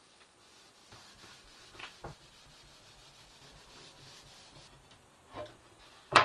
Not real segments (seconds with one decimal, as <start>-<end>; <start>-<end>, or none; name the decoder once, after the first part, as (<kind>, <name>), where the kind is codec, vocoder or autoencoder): 0.0-0.8 (vocoder, Vocos); 1.4-1.8; 5.5-6.2